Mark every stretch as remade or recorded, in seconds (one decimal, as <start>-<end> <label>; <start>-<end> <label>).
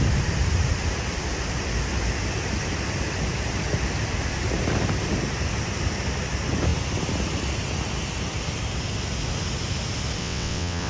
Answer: 0.0-10.2 recorded; 10.2-10.9 remade